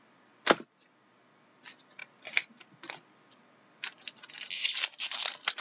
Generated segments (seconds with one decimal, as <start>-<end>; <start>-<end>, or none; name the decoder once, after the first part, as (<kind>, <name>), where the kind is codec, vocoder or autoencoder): none